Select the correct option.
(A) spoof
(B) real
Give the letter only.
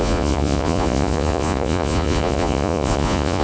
A